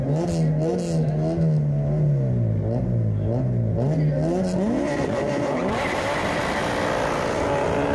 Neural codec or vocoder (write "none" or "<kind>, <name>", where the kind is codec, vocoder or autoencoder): none